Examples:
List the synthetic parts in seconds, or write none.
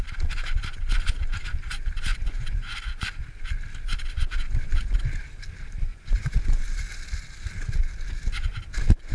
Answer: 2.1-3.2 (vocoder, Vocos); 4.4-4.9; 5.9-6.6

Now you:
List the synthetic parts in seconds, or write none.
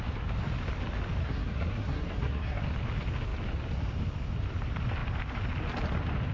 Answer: 1.2-2.6 (codec, SNAC)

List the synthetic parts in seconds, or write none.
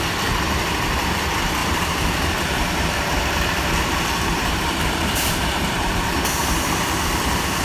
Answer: 1.6-6.2 (vocoder, BigVGAN v2)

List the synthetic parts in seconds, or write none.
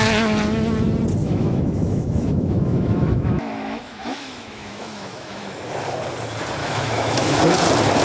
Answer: 1.2-5.6 (autoencoder, DAC-VAE); 6.6-7.4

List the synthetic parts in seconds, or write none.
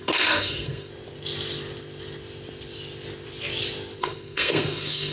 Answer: 0.0-0.9 (codec, SNAC); 4.0-5.1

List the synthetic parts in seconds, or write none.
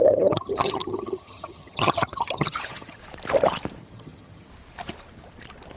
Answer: 0.0-3.0 (vocoder, HiFi-GAN); 3.8-4.5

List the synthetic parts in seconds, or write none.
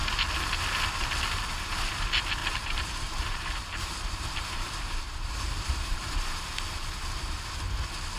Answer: 2.4-6.4 (vocoder, BigVGAN v2)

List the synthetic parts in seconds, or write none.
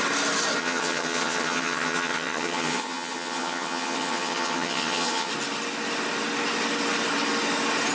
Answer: 0.6-5.3 (vocoder, HiFi-GAN)